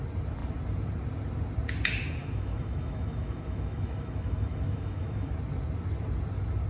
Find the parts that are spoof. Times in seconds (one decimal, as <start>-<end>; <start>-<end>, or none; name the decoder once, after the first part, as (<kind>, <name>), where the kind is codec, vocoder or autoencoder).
2.2-5.3 (autoencoder, DAC-VAE)